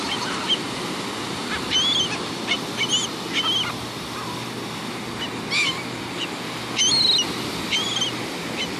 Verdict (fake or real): real